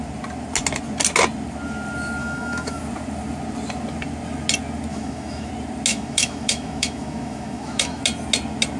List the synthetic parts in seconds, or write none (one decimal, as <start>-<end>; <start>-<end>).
2.2-2.8; 4.9-5.5; 5.9-8.0